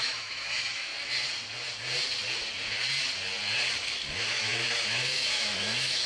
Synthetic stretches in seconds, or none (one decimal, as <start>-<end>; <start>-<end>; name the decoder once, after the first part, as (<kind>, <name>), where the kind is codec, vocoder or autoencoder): 0.0-0.9 (autoencoder, DAC-VAE); 4.1-6.1

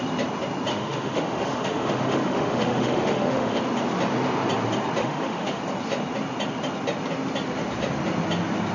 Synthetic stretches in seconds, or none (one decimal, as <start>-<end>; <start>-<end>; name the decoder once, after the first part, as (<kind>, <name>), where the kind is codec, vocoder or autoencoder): 0.7-3.6 (autoencoder, DAC-VAE); 5.0-5.6

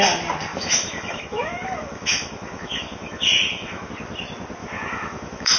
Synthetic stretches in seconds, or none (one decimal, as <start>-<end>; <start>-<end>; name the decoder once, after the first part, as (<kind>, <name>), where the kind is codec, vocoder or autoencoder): 0.5-3.9 (autoencoder, DAC-VAE); 4.6-5.6

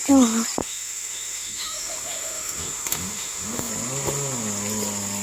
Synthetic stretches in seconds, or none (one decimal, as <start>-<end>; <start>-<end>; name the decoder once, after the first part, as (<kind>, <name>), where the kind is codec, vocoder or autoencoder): 0.6-3.7 (autoencoder, DAC-VAE)

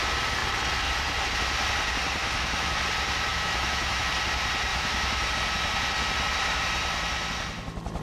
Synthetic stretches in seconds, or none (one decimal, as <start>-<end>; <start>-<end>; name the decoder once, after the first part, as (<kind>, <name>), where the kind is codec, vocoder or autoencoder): 2.2-2.8 (autoencoder, DAC-VAE); 3.3-4.1; 4.7-5.3

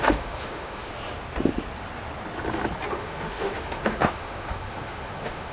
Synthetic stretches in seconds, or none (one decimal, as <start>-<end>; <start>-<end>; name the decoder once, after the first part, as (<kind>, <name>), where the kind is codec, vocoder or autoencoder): 0.0-0.9 (autoencoder, DAC-VAE); 2.9-5.5

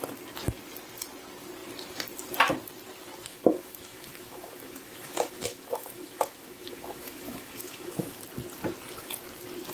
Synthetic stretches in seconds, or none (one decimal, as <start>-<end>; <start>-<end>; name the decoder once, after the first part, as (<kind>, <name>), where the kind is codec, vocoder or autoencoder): 3.3-8.2 (autoencoder, DAC-VAE)

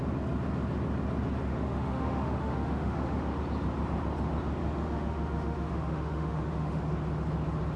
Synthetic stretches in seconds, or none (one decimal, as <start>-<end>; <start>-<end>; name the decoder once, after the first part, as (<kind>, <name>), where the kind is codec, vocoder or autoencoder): 1.5-3.4 (autoencoder, DAC-VAE); 4.6-6.8